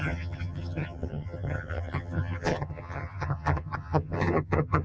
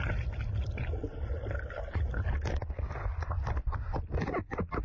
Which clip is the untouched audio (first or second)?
second